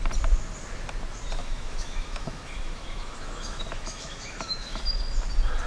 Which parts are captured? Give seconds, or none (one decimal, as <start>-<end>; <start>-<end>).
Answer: 0.0-1.4; 4.8-5.7